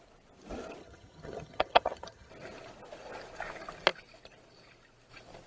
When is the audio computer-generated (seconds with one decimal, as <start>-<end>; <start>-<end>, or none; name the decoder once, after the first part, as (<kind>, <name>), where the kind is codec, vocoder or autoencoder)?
0.8-2.3 (vocoder, HiFi-GAN)